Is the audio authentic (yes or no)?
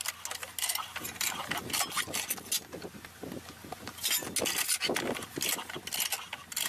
yes